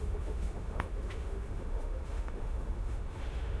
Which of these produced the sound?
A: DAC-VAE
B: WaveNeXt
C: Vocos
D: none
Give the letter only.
A